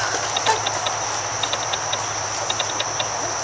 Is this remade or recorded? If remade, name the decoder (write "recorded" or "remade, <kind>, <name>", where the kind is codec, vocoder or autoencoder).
recorded